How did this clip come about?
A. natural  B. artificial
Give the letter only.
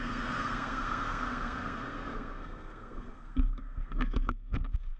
B